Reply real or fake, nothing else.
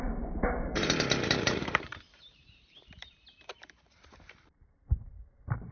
fake